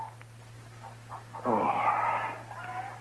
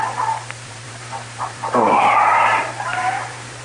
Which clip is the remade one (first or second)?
second